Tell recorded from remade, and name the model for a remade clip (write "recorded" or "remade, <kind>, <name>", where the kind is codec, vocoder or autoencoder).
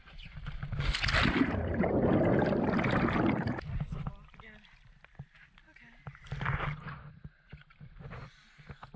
recorded